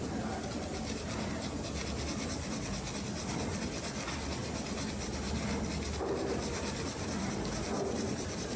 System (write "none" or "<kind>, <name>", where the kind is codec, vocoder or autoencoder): none